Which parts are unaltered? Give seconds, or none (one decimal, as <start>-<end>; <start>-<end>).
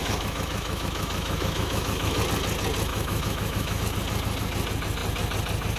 2.2-2.9; 3.8-5.8